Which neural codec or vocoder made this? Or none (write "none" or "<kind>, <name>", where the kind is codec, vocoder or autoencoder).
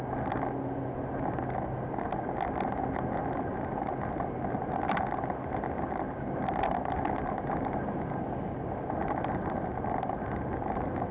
none